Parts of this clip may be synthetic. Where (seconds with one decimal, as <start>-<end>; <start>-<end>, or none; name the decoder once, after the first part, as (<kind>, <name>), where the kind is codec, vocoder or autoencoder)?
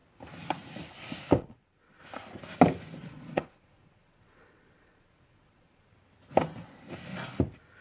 1.4-2.0 (vocoder, Vocos); 3.0-5.9